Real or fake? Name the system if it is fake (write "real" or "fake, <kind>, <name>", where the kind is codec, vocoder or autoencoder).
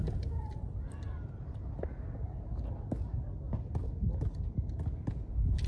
real